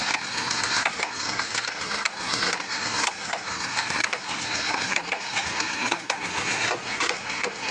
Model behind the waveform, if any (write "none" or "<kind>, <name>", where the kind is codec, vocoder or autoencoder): codec, SNAC